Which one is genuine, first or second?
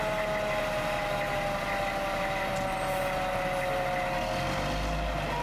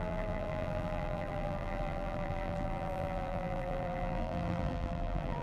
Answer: first